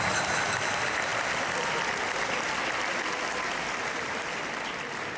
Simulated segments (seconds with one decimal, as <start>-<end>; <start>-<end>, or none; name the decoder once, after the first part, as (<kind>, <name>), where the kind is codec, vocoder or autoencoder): none